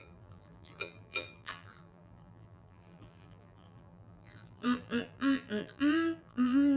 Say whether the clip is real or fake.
fake